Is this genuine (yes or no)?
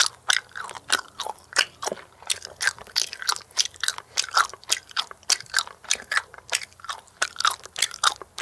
yes